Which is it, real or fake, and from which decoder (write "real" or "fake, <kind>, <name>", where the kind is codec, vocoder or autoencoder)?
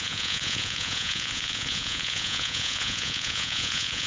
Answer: fake, vocoder, Vocos